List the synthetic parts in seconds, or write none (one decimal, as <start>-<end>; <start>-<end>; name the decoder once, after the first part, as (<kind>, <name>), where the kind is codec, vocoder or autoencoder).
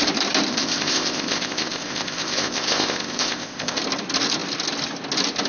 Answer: 0.5-3.8 (codec, ZipCodec)